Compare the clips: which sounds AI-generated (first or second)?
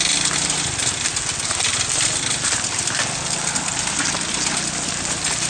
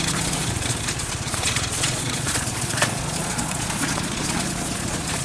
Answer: second